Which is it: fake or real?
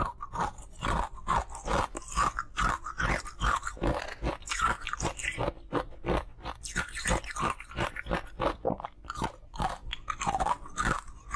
real